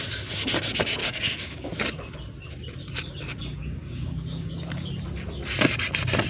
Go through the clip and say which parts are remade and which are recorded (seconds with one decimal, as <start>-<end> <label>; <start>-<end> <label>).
0.0-1.0 recorded; 1.0-1.7 remade; 1.7-3.4 recorded; 3.4-4.5 remade; 4.5-6.3 recorded